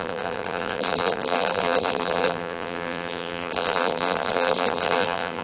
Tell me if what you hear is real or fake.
fake